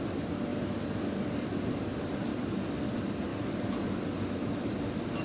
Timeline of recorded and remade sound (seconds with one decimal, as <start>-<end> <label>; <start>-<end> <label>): 0.0-5.2 recorded